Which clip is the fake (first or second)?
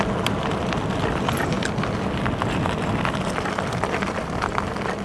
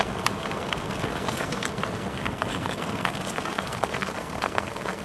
second